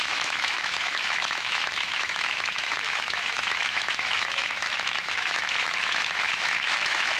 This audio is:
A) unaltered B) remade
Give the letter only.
B